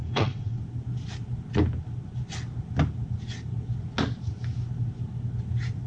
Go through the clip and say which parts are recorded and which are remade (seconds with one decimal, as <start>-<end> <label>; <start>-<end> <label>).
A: 0.0-0.6 remade; 0.6-5.9 recorded